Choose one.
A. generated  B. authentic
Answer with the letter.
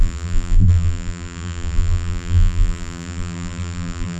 A